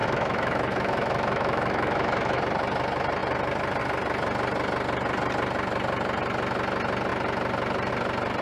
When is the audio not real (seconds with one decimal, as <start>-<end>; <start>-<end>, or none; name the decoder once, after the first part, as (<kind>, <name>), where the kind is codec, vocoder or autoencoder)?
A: 0.0-2.4 (autoencoder, DAC-VAE)